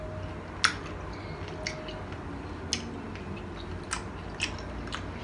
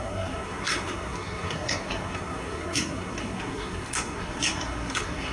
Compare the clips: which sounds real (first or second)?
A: first